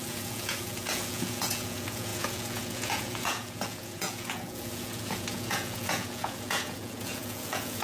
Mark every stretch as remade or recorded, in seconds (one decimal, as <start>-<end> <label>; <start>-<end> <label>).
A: 0.0-7.8 remade